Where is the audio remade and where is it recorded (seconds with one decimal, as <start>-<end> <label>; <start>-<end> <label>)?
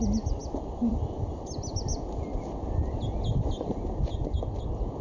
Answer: 0.0-5.0 recorded